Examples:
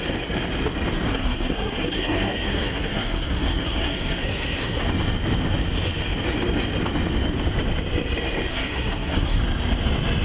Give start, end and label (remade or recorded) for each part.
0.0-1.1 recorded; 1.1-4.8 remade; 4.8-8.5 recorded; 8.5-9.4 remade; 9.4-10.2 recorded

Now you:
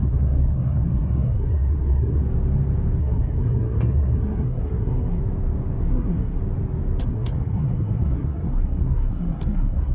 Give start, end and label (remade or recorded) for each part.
0.0-2.2 remade; 2.2-3.0 recorded; 3.0-5.2 remade; 5.2-5.8 recorded; 5.8-6.4 remade; 6.4-7.0 recorded; 7.0-9.9 remade

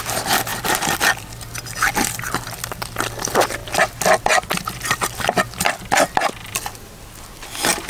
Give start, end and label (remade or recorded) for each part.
0.0-7.9 recorded

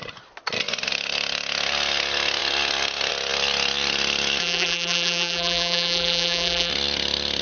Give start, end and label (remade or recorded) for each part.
0.0-4.4 recorded; 4.4-6.7 remade; 6.7-7.4 recorded